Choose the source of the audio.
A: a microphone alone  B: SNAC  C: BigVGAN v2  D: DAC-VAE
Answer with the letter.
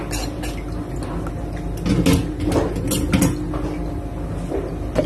A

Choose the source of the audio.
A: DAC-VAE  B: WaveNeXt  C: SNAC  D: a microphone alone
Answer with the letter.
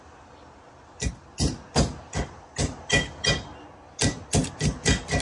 D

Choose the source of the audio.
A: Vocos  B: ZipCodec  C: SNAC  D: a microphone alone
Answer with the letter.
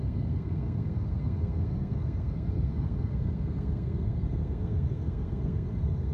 C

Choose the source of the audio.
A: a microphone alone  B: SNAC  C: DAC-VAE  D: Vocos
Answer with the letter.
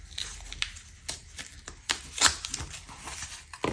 A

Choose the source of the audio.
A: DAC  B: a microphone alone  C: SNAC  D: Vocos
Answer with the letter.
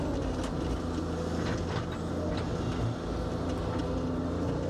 B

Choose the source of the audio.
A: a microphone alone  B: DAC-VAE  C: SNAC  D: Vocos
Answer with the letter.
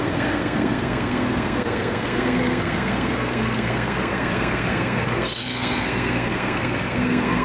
C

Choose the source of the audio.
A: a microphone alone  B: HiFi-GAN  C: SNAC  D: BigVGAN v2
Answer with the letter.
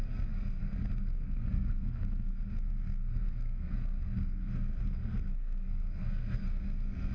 C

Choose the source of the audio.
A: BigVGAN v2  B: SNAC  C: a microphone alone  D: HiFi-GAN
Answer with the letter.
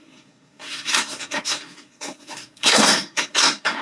B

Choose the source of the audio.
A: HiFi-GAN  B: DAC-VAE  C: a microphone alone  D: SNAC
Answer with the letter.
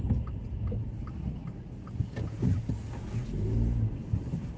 C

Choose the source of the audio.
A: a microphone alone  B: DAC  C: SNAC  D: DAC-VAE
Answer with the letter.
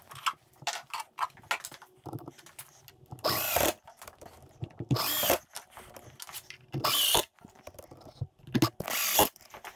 A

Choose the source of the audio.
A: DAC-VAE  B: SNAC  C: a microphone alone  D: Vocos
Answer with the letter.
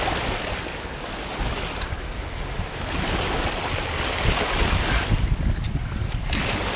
C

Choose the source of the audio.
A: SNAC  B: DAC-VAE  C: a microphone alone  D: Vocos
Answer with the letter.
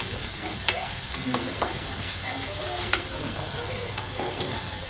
A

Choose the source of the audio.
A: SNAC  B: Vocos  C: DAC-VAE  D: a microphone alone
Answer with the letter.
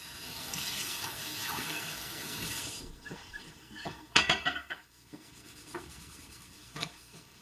A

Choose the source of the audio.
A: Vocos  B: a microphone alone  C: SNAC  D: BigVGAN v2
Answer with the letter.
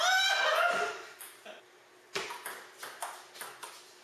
B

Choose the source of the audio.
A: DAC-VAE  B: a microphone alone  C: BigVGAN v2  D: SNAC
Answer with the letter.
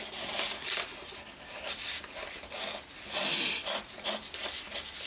B